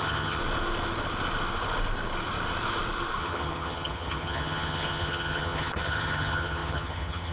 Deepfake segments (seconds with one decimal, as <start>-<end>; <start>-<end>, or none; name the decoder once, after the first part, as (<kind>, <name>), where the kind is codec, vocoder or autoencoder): 0.0-0.4 (vocoder, HiFi-GAN); 3.2-7.3